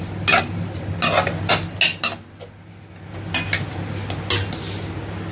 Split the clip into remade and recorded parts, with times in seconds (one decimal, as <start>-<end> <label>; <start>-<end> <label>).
0.0-5.3 recorded